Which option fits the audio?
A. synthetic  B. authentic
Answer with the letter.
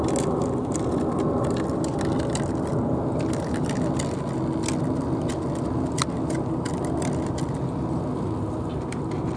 B